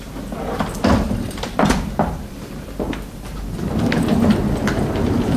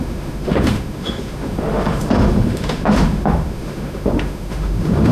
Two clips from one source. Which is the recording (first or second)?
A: first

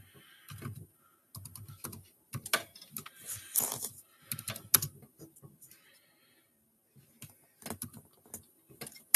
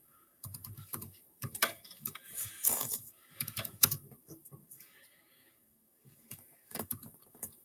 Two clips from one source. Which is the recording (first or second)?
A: first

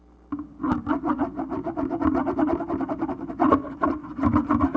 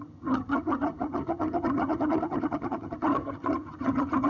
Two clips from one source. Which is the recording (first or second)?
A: first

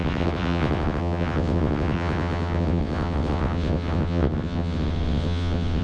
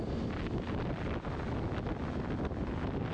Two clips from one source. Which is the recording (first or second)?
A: second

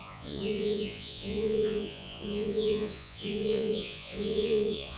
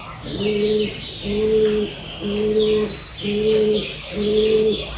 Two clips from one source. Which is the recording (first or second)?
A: second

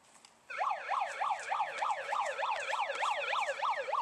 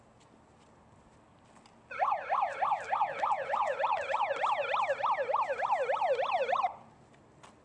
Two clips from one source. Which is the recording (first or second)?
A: second